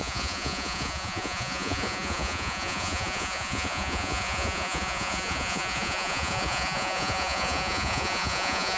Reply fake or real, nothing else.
fake